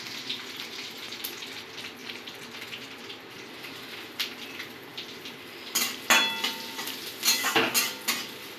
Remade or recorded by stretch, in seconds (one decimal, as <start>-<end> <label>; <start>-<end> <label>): 0.0-8.6 recorded